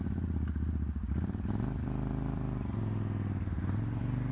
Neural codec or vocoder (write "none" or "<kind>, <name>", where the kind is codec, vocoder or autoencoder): none